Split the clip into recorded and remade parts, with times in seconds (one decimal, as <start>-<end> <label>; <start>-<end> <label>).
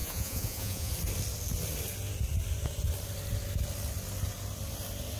0.0-0.9 remade; 0.9-5.2 recorded